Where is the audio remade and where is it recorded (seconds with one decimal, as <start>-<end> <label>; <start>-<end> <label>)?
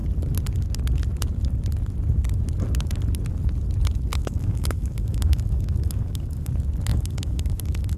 0.0-4.1 recorded; 4.1-6.5 remade; 6.5-6.9 recorded; 6.9-8.0 remade